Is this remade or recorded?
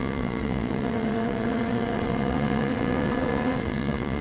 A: remade